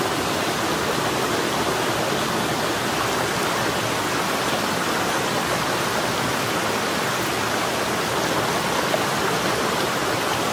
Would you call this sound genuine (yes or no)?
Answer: yes